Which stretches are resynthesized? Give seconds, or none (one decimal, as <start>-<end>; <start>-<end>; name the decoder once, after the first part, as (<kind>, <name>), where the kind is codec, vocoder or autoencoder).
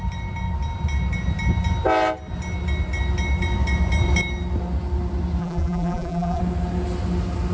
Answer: 5.4-6.4 (vocoder, BigVGAN v2)